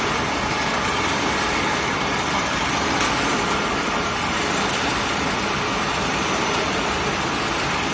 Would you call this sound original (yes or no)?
no